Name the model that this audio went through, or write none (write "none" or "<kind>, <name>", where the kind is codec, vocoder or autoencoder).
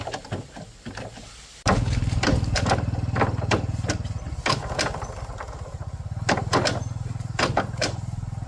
none